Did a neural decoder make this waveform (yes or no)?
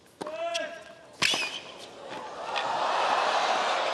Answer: no